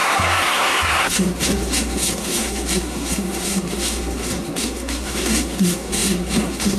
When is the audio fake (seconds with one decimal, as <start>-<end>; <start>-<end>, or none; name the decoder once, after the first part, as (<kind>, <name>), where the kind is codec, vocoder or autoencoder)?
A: 0.0-6.8 (codec, SNAC)